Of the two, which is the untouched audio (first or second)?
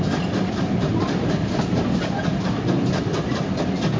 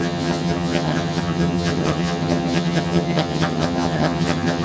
first